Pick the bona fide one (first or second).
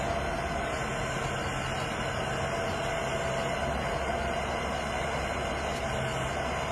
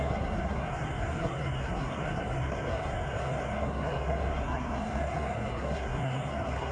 first